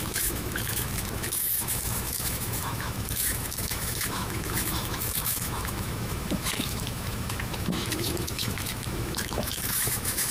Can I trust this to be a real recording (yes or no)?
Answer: no